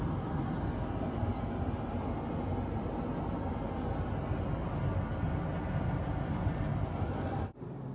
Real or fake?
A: real